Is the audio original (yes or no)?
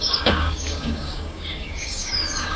no